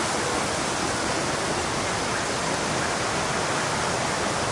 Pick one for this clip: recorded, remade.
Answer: recorded